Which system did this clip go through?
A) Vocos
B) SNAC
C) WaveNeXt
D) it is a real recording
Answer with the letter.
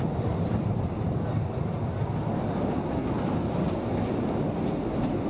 D